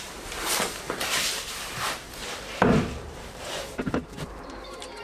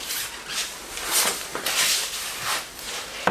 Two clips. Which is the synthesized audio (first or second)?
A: first